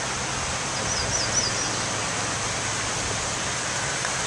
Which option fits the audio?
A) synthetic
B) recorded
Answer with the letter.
B